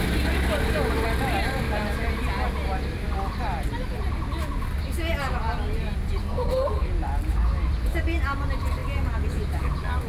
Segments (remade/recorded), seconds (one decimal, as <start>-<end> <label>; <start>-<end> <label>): 0.0-6.2 recorded; 6.2-6.9 remade; 6.9-10.1 recorded